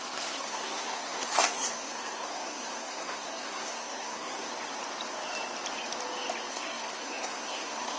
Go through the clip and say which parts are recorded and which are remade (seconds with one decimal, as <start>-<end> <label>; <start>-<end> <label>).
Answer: 0.0-4.5 remade; 4.5-6.5 recorded; 6.5-8.0 remade